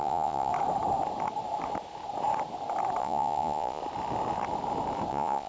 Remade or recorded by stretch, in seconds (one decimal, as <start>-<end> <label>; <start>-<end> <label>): 0.0-0.5 remade; 0.5-3.0 recorded; 3.0-3.8 remade; 3.8-5.1 recorded; 5.1-5.5 remade